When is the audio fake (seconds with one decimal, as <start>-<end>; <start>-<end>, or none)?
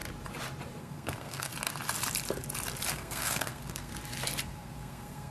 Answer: 0.8-1.5; 2.9-3.9; 4.4-5.3